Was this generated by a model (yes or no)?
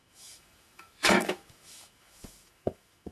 yes